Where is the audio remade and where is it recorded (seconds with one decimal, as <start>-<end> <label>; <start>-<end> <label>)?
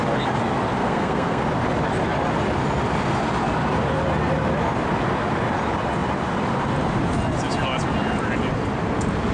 0.0-0.8 recorded; 0.8-1.4 remade; 1.4-9.3 recorded